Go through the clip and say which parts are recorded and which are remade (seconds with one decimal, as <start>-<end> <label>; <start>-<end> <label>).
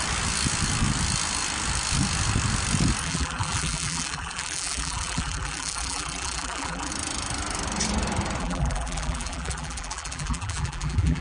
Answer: 0.0-3.0 recorded; 3.0-6.9 remade; 6.9-8.4 recorded; 8.4-11.2 remade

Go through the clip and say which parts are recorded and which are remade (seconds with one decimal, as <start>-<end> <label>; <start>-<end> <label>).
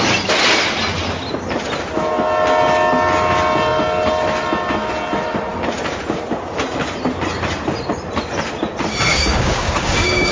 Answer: 0.0-9.1 recorded; 9.1-10.3 remade